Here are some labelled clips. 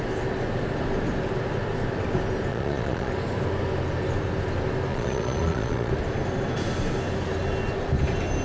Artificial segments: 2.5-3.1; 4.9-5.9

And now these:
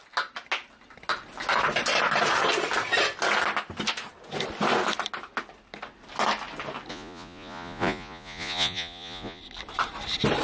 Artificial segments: 6.9-9.4